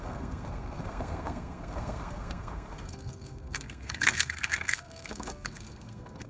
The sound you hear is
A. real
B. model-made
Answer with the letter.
B